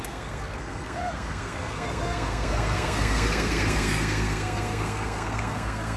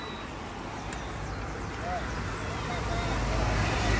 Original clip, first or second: second